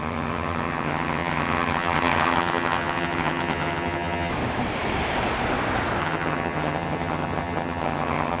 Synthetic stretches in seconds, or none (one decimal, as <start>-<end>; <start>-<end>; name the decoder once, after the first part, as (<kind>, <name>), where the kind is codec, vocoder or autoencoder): 0.0-4.3 (vocoder, HiFi-GAN); 6.0-8.4